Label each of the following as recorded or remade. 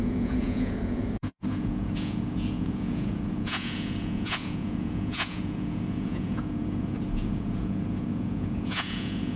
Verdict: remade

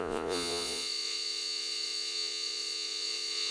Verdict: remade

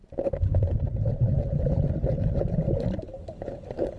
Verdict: recorded